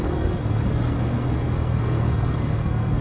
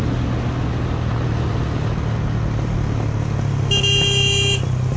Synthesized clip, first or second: first